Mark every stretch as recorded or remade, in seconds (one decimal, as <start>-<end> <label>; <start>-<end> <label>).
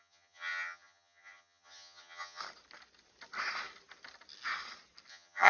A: 0.0-2.4 remade; 2.4-5.1 recorded; 5.1-5.5 remade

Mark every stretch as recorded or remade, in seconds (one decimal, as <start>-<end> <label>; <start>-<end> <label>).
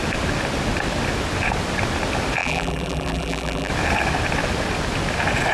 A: 0.0-2.4 recorded; 2.4-3.7 remade; 3.7-5.5 recorded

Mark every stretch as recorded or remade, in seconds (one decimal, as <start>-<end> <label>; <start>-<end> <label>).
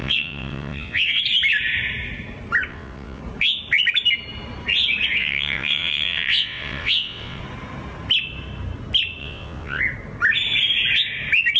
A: 0.0-1.2 remade; 1.2-2.7 recorded; 2.7-3.2 remade; 3.2-5.2 recorded; 5.2-7.4 remade; 7.4-9.2 recorded; 9.2-9.8 remade; 9.8-11.6 recorded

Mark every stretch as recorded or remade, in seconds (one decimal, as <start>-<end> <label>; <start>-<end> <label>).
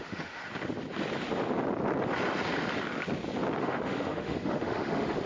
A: 0.0-0.4 remade; 0.4-3.6 recorded; 3.6-5.3 remade